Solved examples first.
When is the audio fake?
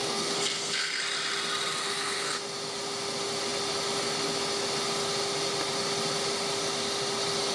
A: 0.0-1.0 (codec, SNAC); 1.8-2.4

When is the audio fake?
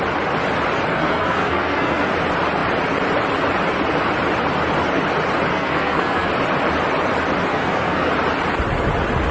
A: 0.9-2.1 (codec, SNAC); 5.5-6.3; 7.5-8.1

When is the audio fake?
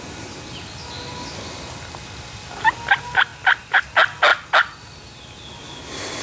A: none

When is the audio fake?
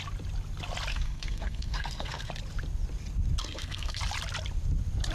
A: 0.9-2.3 (codec, SNAC); 3.4-4.0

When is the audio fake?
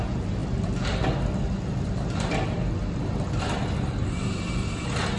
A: none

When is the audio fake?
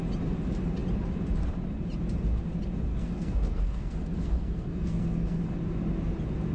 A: 2.9-5.4 (codec, SNAC)